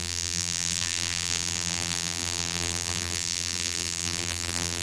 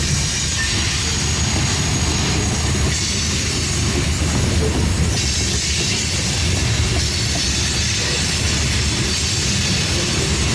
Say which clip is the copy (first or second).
first